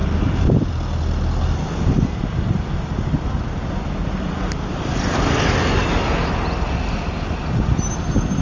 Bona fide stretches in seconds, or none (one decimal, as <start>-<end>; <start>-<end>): 0.7-8.4